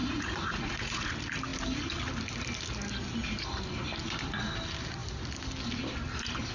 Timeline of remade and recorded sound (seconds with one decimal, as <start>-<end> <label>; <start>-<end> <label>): 0.0-1.1 remade; 1.1-6.5 recorded